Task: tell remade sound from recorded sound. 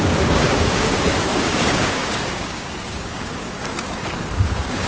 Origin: remade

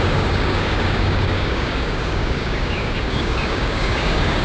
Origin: remade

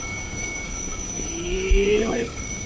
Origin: remade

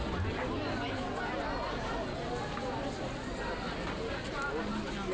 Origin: recorded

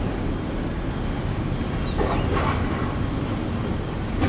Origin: recorded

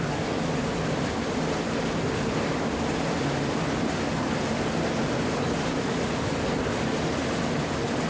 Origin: recorded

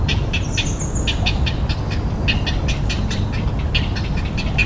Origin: recorded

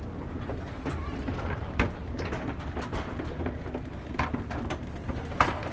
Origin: recorded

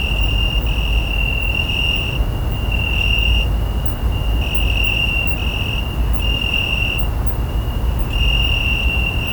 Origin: recorded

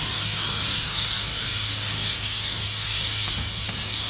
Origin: remade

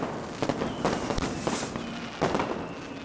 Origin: recorded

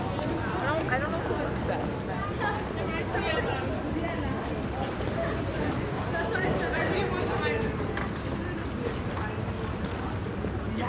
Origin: recorded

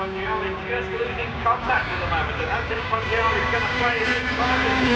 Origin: remade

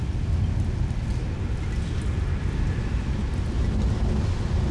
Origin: recorded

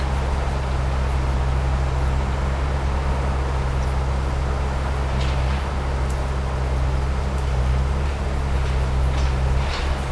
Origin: recorded